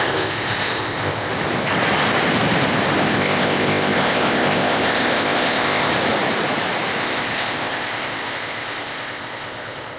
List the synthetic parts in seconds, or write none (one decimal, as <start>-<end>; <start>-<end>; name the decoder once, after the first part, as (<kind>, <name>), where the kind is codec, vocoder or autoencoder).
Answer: 0.0-1.3 (codec, ZipCodec); 3.0-5.9; 7.0-10.0